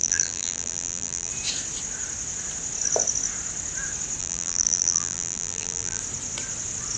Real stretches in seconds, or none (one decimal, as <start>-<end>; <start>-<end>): 1.3-4.2; 6.0-7.0